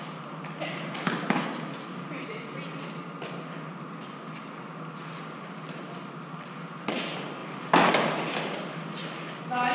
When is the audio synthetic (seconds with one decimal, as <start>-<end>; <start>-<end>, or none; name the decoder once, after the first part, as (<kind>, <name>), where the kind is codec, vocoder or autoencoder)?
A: none